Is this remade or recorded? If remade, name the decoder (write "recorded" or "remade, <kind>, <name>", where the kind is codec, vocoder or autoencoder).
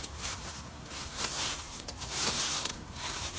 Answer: remade, codec, SNAC